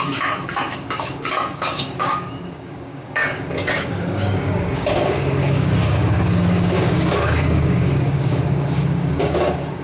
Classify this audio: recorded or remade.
remade